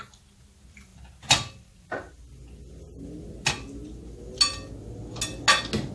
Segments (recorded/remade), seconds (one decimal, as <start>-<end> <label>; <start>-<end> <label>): 0.0-5.9 recorded